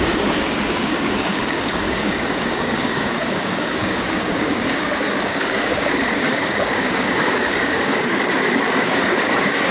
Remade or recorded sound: remade